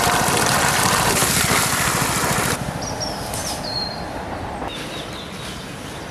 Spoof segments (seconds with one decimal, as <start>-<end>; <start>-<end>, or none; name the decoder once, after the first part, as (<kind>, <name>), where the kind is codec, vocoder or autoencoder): 1.2-3.0 (vocoder, BigVGAN v2); 3.4-6.1